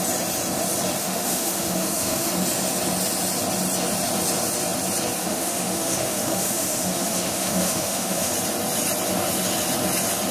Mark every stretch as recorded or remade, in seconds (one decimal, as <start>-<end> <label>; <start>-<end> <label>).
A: 0.0-1.0 recorded; 1.0-2.3 remade; 2.3-5.2 recorded; 5.2-8.3 remade; 8.3-10.3 recorded